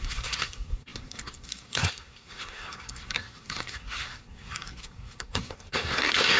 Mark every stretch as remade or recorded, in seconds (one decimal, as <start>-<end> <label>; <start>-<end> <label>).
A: 0.0-6.4 remade